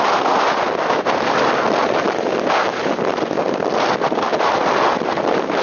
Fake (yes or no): no